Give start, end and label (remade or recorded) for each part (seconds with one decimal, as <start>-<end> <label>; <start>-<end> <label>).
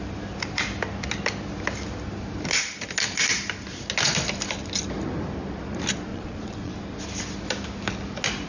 0.0-6.1 recorded; 6.1-6.7 remade; 6.7-8.5 recorded